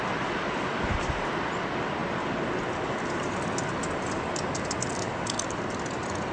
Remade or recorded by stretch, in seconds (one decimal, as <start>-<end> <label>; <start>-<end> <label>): 0.0-6.3 recorded